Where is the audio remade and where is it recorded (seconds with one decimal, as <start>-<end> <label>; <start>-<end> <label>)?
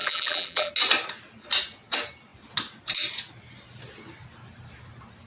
0.0-0.7 remade; 0.7-5.3 recorded